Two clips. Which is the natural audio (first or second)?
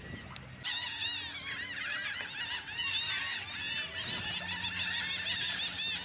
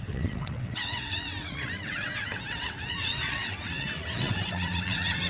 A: first